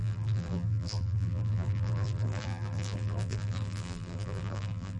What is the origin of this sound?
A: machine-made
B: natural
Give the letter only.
A